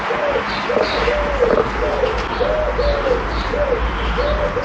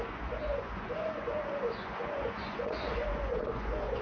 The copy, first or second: second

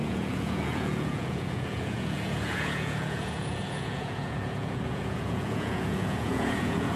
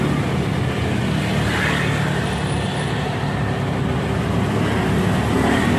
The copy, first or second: first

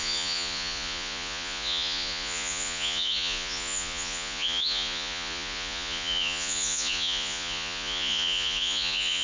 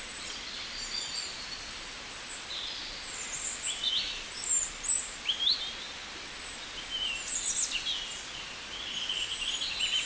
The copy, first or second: first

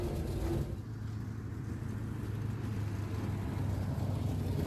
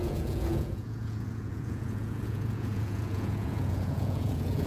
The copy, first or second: second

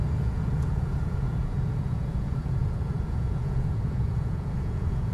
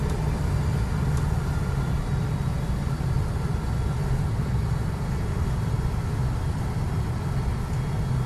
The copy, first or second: first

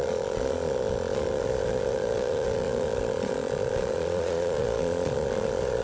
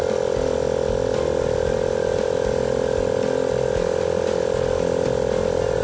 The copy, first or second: first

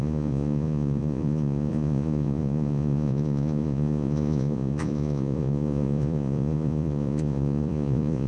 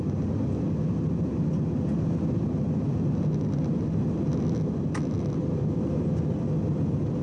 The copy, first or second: first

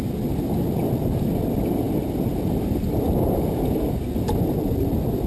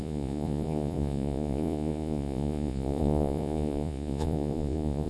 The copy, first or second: second